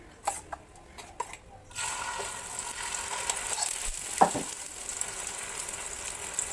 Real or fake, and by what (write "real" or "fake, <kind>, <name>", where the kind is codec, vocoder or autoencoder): real